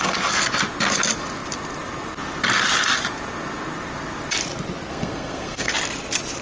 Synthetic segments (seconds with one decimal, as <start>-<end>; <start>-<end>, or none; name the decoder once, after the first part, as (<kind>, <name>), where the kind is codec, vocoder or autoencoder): 4.9-5.7 (codec, SNAC)